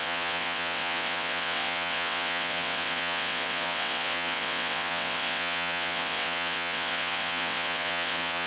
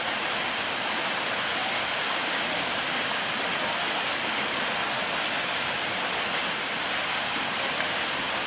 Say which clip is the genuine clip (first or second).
second